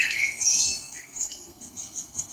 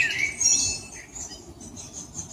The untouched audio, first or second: second